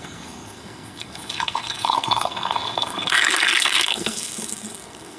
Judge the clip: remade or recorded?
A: remade